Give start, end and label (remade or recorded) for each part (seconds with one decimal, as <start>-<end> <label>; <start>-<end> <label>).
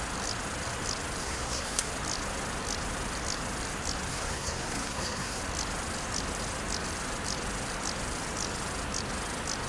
0.0-1.2 recorded; 1.2-1.9 remade; 1.9-4.1 recorded; 4.1-5.4 remade; 5.4-9.7 recorded